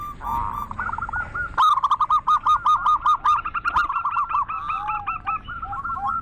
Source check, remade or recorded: recorded